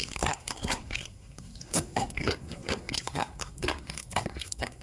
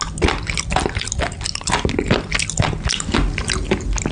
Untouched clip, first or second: second